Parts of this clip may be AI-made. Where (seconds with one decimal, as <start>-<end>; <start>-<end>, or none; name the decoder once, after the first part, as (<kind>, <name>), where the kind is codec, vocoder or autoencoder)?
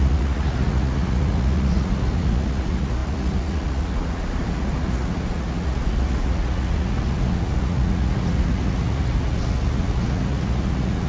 0.0-11.1 (vocoder, Vocos)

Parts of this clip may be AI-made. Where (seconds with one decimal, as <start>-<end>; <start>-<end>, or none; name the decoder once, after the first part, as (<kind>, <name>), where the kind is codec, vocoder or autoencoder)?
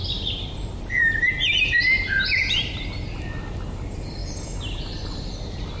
0.0-5.8 (vocoder, BigVGAN v2)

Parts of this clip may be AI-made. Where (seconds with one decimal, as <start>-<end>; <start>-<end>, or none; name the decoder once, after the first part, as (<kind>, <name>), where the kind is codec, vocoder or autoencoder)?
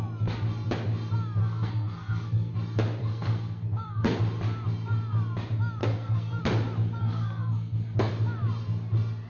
1.4-2.5 (codec, SNAC); 3.0-4.2; 5.8-6.4; 7.0-8.1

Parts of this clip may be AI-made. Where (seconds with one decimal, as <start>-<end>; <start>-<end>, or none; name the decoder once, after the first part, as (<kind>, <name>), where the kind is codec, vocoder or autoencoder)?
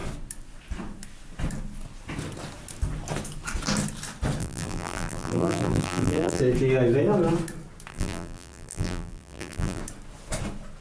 4.4-6.4 (vocoder, BigVGAN v2); 7.9-9.8